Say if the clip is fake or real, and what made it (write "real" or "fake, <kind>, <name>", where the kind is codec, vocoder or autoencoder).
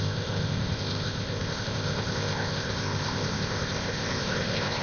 fake, codec, ZipCodec